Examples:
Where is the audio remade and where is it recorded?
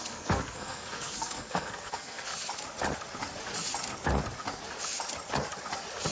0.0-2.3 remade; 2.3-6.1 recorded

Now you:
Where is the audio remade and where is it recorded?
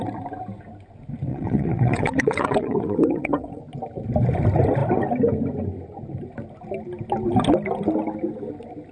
0.0-1.3 recorded; 1.3-3.6 remade; 3.6-8.9 recorded